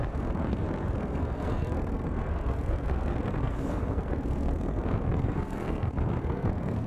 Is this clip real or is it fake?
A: fake